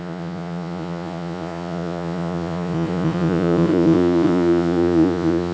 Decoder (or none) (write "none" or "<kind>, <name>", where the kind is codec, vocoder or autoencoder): vocoder, Vocos